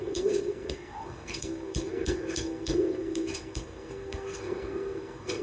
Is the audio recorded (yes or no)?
no